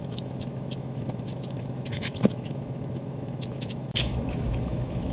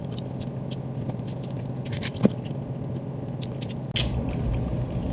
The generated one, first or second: first